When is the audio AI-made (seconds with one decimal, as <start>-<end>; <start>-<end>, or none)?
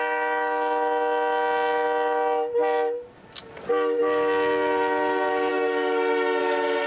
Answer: 5.5-6.4